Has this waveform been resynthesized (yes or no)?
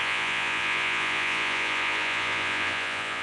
yes